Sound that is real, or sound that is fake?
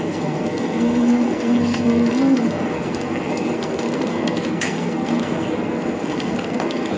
fake